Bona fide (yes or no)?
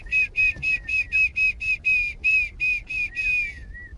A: yes